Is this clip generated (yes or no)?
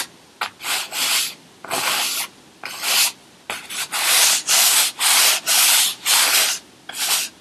no